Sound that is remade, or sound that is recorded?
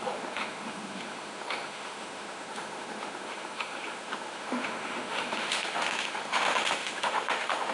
remade